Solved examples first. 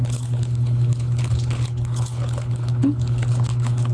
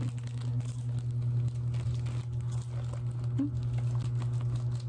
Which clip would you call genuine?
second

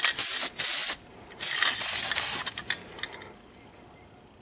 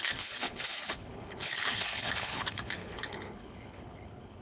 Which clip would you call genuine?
first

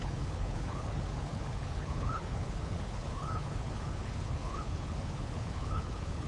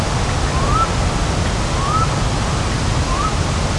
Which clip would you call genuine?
second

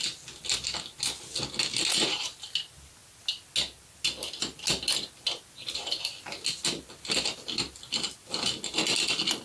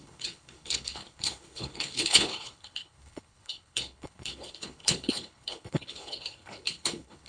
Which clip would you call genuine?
first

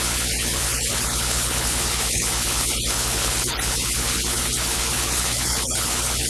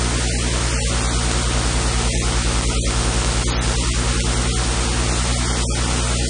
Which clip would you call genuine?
second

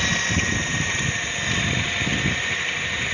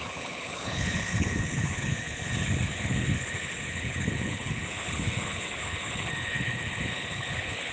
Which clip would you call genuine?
first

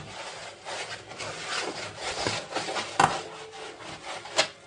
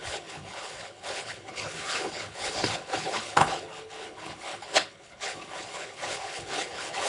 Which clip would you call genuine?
first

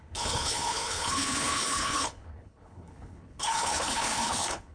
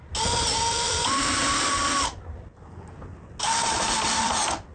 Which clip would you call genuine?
second